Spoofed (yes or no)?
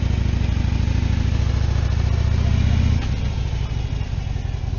no